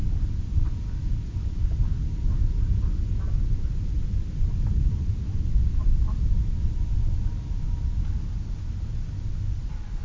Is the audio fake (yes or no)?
no